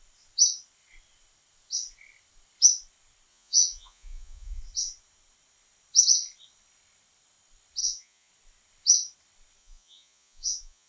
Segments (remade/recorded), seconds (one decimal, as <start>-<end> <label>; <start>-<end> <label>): 0.0-3.3 recorded; 3.3-4.6 remade; 4.6-7.8 recorded; 7.8-8.3 remade; 8.3-9.6 recorded; 9.6-10.9 remade